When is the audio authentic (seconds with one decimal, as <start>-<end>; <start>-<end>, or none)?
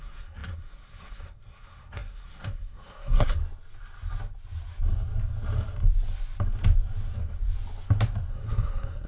3.4-8.3